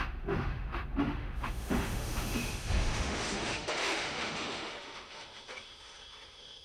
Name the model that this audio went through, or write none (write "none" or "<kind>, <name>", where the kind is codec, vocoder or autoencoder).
autoencoder, DAC-VAE